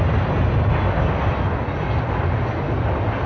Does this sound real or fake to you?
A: real